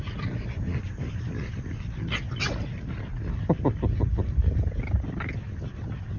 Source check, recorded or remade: recorded